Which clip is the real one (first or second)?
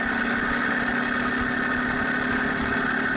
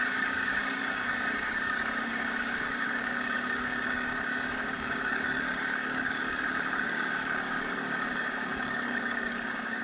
first